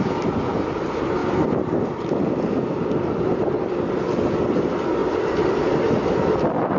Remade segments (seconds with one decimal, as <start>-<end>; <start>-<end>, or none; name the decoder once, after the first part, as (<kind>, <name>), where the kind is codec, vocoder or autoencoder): 1.2-4.4 (vocoder, BigVGAN v2); 5.0-6.1